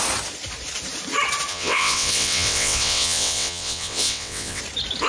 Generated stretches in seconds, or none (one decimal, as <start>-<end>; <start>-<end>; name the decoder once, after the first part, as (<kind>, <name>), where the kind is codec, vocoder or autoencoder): 1.5-4.6 (vocoder, WaveNeXt)